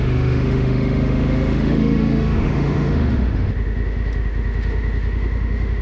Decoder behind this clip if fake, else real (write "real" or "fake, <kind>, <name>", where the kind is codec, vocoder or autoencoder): fake, autoencoder, DAC-VAE